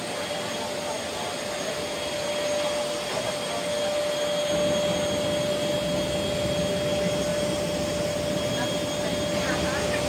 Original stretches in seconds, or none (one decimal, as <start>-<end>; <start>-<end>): 0.0-7.3; 8.5-10.1